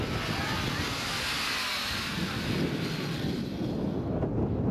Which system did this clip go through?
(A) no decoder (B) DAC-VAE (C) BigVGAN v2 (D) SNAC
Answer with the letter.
A